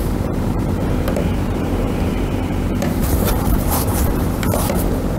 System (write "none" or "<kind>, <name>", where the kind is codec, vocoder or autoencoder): vocoder, BigVGAN v2